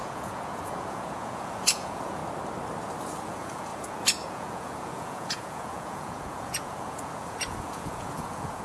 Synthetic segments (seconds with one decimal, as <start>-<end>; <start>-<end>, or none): 0.0-2.2; 3.2-8.6